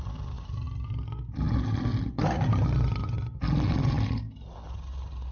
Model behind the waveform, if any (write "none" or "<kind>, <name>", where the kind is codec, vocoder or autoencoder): none